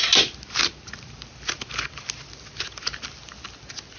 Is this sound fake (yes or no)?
no